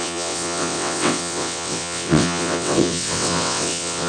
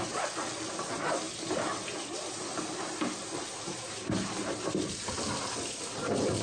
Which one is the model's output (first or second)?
first